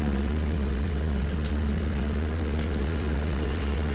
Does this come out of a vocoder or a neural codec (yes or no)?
yes